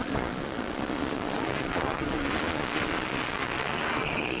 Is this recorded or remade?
remade